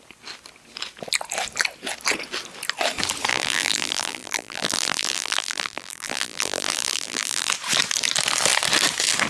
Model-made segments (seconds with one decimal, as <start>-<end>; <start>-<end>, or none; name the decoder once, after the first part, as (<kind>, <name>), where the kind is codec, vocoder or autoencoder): 3.3-7.5 (vocoder, BigVGAN v2)